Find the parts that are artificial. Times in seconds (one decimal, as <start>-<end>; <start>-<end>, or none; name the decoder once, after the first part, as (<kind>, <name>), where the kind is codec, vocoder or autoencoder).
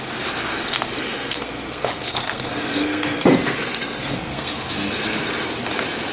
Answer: 1.0-4.7 (codec, SNAC)